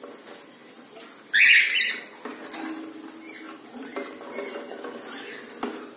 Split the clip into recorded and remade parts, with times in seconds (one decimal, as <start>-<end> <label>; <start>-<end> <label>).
0.0-6.0 recorded